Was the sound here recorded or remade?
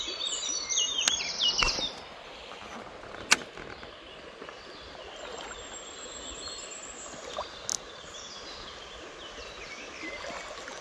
recorded